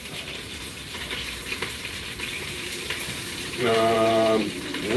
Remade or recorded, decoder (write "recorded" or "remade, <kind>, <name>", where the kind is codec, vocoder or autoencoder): remade, vocoder, BigVGAN v2